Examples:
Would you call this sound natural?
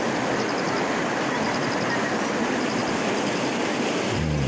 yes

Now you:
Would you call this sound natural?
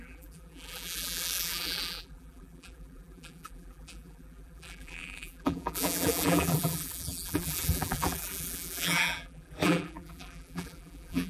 no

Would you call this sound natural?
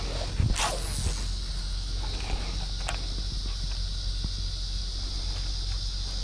yes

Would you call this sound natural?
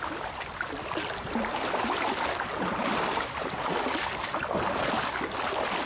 yes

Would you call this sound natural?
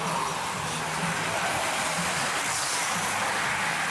yes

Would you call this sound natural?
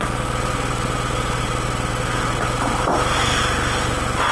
yes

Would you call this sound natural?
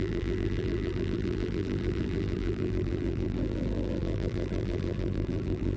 no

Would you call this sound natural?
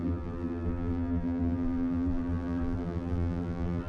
no